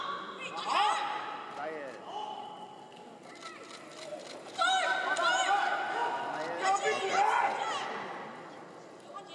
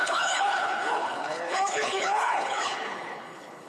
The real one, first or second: first